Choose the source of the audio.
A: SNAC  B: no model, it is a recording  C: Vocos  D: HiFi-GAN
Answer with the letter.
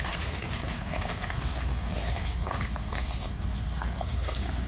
A